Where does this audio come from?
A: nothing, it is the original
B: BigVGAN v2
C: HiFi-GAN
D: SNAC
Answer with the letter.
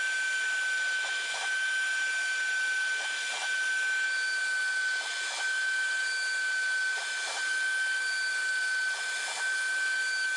A